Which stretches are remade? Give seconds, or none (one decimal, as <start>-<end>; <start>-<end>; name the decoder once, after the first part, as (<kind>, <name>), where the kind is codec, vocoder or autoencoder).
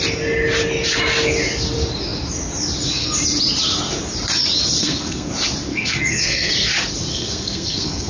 4.8-5.3 (codec, SNAC); 5.7-6.5; 7.1-8.1